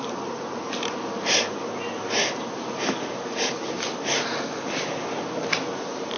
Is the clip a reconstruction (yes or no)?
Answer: no